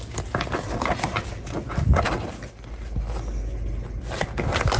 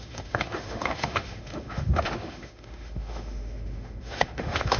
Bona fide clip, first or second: first